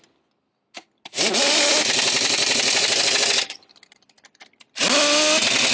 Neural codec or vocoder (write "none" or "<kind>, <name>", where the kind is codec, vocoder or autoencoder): none